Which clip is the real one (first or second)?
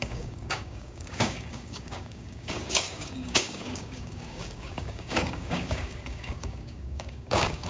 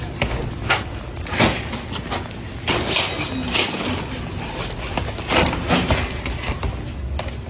second